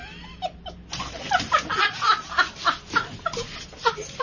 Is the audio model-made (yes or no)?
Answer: no